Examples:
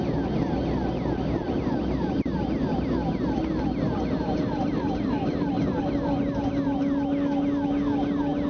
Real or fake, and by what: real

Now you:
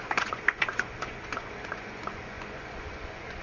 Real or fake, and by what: fake, vocoder, Vocos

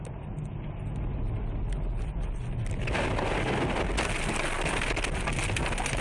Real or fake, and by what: real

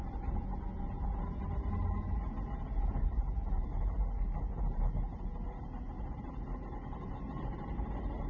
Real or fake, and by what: real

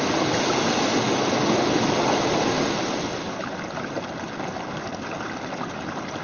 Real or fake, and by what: real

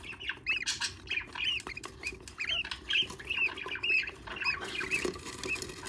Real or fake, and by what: real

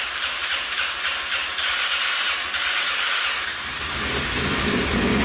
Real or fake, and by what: real